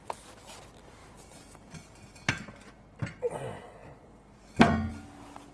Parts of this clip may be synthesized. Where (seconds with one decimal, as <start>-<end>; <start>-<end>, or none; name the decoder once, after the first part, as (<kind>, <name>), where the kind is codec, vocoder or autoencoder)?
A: none